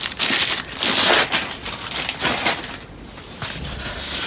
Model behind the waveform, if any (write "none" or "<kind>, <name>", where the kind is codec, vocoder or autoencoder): none